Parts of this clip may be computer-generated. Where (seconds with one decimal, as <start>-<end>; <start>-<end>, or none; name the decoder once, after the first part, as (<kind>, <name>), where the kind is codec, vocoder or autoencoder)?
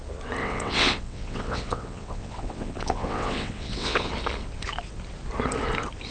0.4-4.1 (vocoder, WaveNeXt)